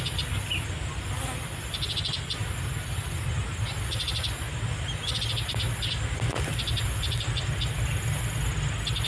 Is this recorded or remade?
recorded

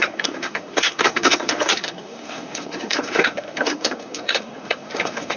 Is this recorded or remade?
remade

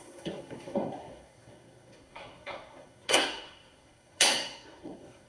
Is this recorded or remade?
remade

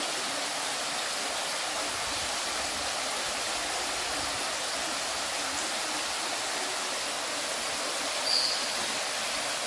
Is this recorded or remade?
recorded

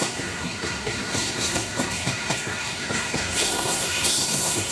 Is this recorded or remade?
remade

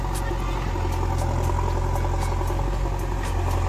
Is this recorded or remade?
recorded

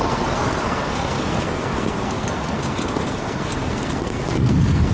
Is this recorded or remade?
remade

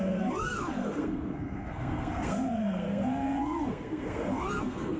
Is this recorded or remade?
remade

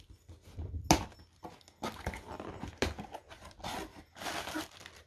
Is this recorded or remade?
recorded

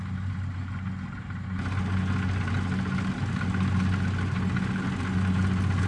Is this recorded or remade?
recorded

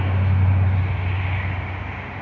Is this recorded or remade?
recorded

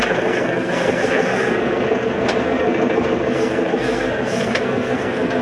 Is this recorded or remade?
remade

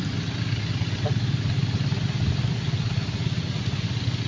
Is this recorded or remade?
recorded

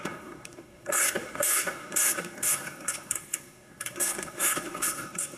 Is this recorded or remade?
remade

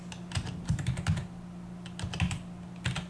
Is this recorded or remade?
recorded